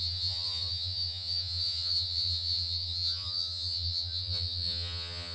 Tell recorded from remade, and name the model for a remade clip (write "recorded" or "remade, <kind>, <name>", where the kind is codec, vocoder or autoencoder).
remade, vocoder, HiFi-GAN